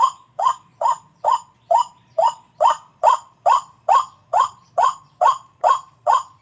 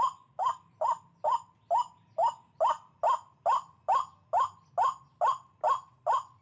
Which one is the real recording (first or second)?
second